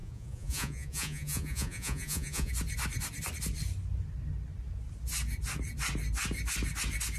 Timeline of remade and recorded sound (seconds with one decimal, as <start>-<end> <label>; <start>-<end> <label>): 0.0-2.5 remade; 2.5-7.2 recorded